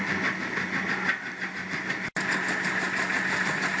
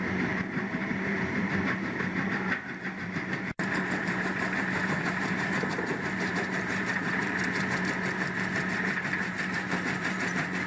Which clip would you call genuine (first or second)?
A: first